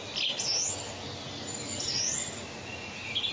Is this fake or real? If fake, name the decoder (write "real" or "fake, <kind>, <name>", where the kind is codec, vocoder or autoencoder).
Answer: real